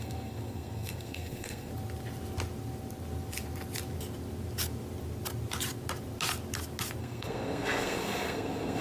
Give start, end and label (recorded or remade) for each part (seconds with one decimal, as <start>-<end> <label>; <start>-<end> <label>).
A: 0.0-1.7 remade; 1.7-7.0 recorded; 7.0-8.8 remade